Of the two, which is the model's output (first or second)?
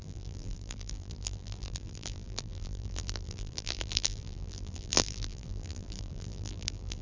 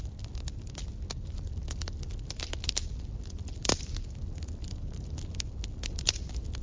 first